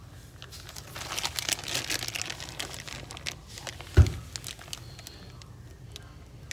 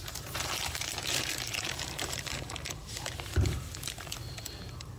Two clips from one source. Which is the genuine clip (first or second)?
first